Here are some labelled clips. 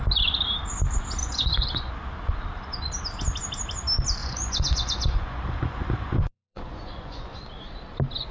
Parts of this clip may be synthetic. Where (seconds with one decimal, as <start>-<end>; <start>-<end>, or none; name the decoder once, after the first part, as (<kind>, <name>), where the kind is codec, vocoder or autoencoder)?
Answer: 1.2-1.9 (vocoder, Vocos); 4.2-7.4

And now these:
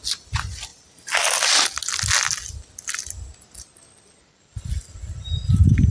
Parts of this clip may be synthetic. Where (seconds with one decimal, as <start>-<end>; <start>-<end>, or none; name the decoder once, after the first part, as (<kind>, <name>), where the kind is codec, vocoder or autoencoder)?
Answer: none

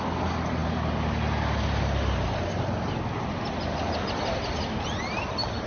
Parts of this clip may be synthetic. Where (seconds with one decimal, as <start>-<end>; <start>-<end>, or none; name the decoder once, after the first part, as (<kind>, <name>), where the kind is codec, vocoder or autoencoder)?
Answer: none

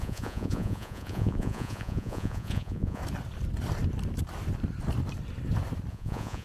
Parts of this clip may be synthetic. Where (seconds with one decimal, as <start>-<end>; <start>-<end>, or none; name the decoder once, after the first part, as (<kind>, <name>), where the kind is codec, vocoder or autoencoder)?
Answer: 0.0-3.0 (vocoder, Vocos); 5.9-6.4